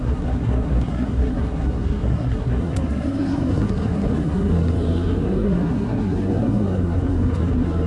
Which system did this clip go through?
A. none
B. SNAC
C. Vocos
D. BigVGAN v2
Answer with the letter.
B